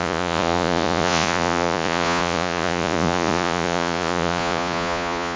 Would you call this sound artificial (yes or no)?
yes